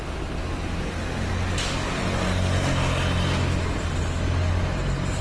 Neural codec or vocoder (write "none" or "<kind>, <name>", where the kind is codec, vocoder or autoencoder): none